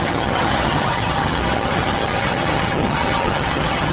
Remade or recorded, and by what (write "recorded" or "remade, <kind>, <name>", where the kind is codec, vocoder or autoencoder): remade, vocoder, HiFi-GAN